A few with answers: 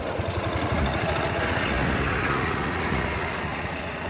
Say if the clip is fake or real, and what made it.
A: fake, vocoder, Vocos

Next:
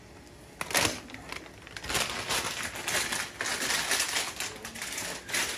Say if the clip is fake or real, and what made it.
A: real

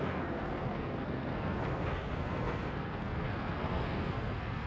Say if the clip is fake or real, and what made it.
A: fake, codec, SNAC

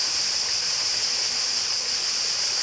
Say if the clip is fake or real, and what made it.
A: real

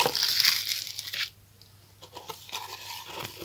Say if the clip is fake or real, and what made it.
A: real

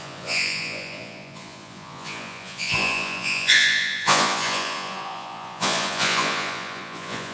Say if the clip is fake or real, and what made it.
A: fake, vocoder, Vocos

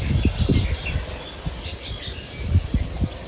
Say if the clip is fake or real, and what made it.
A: real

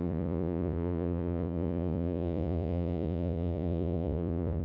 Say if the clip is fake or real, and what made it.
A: fake, vocoder, Vocos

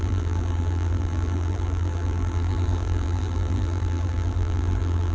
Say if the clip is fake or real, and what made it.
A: fake, vocoder, BigVGAN v2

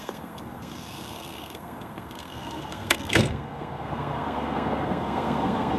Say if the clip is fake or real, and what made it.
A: fake, codec, SNAC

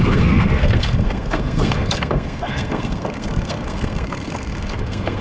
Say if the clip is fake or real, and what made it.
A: fake, codec, SNAC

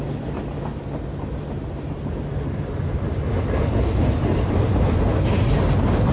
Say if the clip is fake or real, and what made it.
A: real